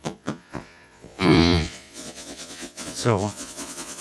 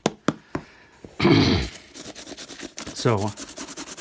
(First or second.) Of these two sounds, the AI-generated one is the first